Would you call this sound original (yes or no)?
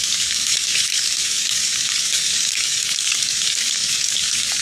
no